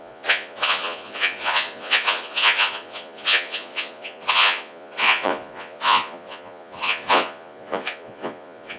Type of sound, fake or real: fake